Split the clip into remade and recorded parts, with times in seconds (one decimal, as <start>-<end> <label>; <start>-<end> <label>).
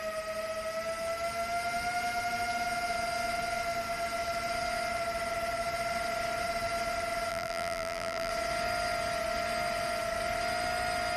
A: 0.0-7.3 recorded; 7.3-8.3 remade; 8.3-11.2 recorded